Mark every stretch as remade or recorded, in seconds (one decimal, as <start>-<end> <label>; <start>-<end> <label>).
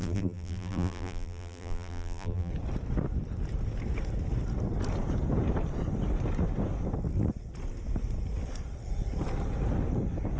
0.0-2.5 remade; 2.5-10.4 recorded